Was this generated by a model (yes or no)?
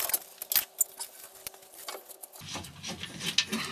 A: no